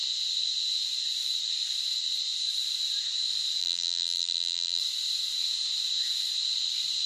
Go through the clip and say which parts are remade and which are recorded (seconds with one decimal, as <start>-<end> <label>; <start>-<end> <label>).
0.0-3.6 recorded; 3.6-4.8 remade; 4.8-7.1 recorded